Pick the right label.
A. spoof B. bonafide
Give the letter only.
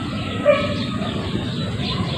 B